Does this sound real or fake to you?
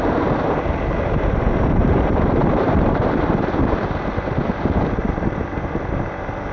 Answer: fake